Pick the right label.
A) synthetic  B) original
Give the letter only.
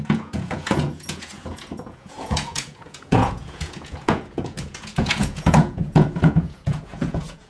A